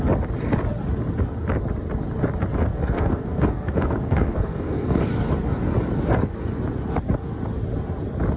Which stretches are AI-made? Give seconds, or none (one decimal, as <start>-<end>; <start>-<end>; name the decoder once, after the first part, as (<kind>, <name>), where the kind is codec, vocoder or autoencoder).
2.7-5.0 (codec, SNAC)

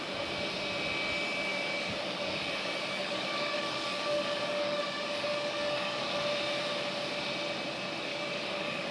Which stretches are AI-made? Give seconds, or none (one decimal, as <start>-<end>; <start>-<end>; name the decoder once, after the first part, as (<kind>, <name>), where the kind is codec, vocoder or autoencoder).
1.5-6.2 (codec, DAC); 8.1-8.9

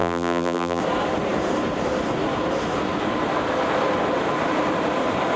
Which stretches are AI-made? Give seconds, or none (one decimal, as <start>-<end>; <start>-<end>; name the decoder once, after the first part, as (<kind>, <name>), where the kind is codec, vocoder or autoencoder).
0.0-0.8 (vocoder, BigVGAN v2)